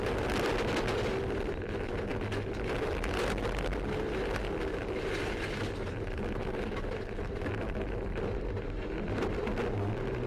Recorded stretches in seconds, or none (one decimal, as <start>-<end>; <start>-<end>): 0.0-10.3

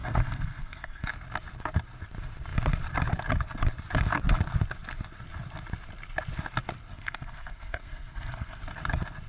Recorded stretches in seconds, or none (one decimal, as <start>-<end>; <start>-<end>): 1.1-6.9; 8.6-9.3

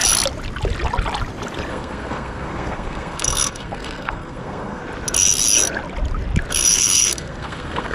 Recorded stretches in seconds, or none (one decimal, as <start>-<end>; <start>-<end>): 0.0-1.7; 4.8-6.5

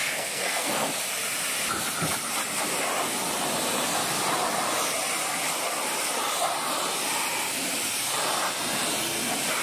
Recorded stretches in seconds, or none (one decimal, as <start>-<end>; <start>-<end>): 0.9-9.6

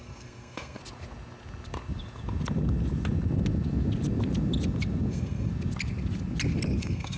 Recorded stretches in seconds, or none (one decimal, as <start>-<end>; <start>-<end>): 0.8-5.1; 5.5-6.8

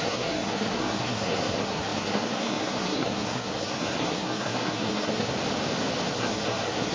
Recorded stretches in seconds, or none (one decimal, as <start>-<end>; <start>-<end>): 5.3-6.1